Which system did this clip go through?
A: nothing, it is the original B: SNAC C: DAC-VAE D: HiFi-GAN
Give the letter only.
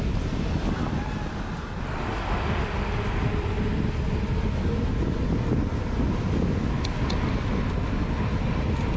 A